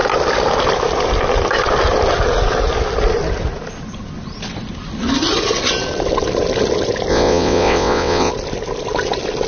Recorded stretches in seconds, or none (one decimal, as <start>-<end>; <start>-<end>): 0.0-7.1; 8.3-9.5